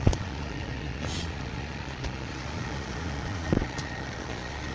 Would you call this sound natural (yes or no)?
no